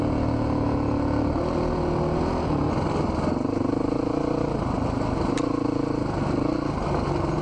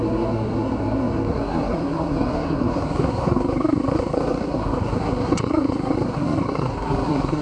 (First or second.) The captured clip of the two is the first